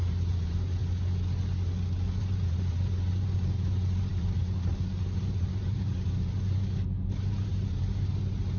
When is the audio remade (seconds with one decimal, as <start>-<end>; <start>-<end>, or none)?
0.0-0.8; 2.2-8.6